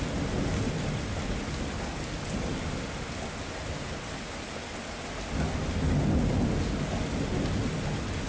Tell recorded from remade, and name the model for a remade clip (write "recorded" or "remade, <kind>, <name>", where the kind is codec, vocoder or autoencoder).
recorded